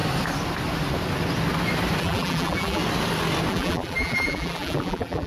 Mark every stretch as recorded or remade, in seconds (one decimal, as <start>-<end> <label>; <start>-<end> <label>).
0.0-2.0 recorded; 2.0-2.8 remade; 2.8-3.5 recorded; 3.5-5.3 remade